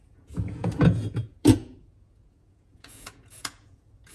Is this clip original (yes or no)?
no